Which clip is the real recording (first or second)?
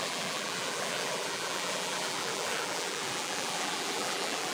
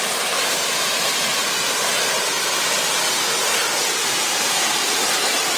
second